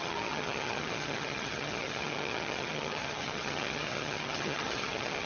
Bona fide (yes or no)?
no